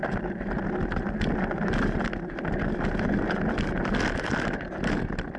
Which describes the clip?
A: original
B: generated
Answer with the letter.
A